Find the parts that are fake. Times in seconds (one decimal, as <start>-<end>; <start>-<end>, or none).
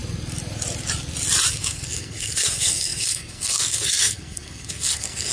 1.5-5.3